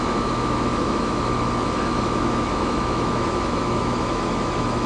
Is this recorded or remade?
remade